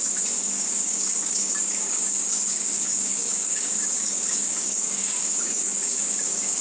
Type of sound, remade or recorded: remade